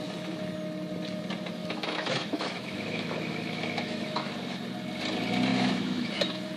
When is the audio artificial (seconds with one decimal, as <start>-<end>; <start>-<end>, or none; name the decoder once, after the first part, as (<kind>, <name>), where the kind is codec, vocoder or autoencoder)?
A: 1.6-4.3 (autoencoder, DAC-VAE); 5.5-6.1